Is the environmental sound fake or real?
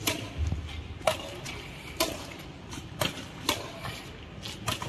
real